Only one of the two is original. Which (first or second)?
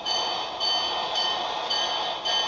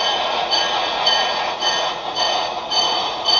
first